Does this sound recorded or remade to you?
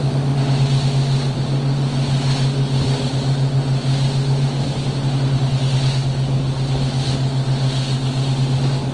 recorded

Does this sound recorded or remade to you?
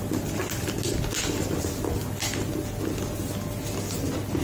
recorded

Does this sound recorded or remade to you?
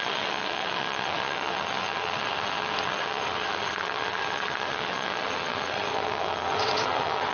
remade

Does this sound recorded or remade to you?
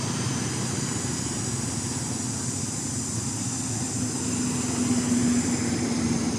recorded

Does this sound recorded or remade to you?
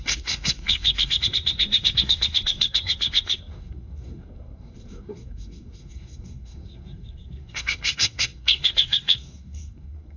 remade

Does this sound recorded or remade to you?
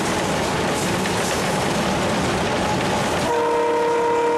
recorded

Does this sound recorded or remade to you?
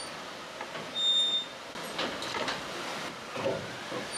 recorded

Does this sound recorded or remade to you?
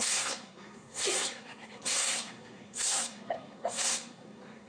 remade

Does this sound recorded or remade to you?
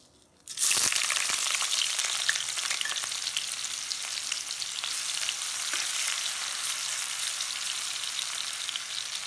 recorded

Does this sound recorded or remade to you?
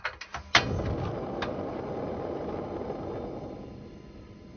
recorded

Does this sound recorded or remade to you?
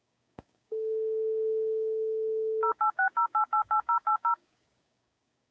remade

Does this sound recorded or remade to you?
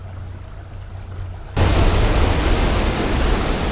recorded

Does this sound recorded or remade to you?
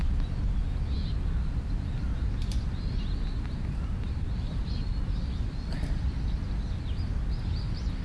recorded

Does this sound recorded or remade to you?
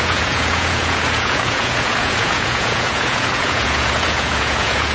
remade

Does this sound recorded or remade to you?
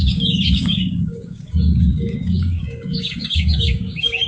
remade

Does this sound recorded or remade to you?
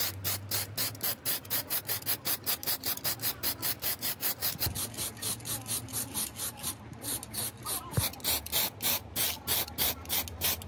recorded